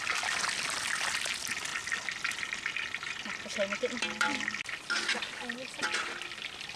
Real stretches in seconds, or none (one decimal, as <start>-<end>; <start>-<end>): 0.0-6.8